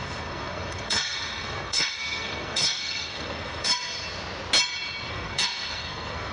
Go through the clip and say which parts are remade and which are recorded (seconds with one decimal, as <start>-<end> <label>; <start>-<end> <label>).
0.0-3.7 remade; 3.7-5.1 recorded; 5.1-6.3 remade